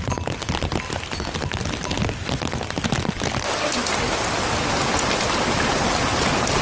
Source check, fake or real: real